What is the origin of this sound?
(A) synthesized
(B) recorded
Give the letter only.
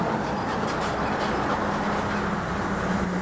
B